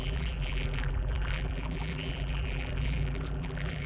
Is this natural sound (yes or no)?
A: no